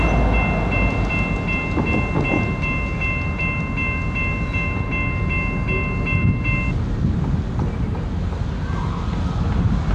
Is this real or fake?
real